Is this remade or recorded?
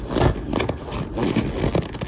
recorded